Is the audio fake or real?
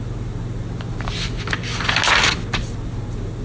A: real